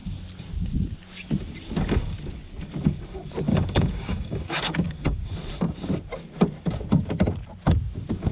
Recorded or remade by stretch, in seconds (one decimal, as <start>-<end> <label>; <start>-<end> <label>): 0.0-3.5 recorded; 3.5-5.3 remade; 5.3-8.3 recorded